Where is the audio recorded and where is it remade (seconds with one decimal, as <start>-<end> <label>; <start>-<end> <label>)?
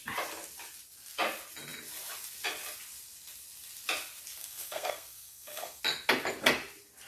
0.0-4.4 recorded; 4.4-5.8 remade; 5.8-7.1 recorded